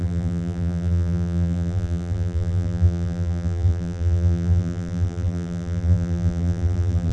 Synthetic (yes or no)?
yes